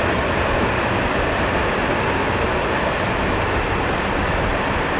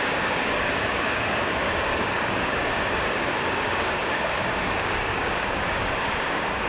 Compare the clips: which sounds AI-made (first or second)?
second